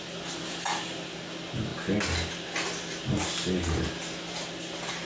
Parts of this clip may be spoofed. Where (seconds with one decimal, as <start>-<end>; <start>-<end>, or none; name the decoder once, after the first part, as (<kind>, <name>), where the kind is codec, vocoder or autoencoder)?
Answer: none